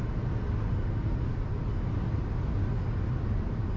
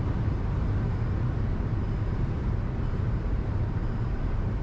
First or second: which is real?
first